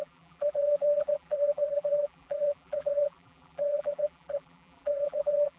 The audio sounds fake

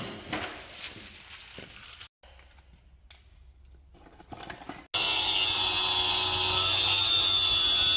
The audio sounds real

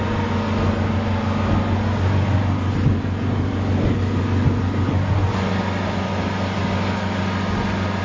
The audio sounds real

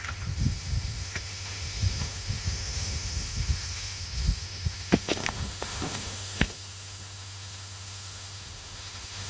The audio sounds fake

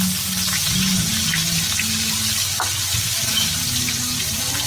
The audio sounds real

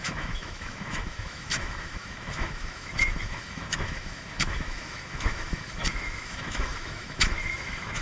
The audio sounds fake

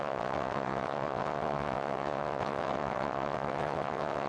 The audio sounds fake